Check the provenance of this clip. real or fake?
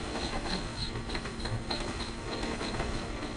fake